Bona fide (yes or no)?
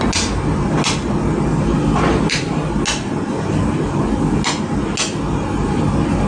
yes